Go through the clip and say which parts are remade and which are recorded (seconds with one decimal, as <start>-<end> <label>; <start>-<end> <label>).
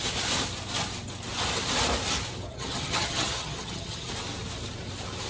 0.0-2.5 recorded; 2.5-4.1 remade; 4.1-5.3 recorded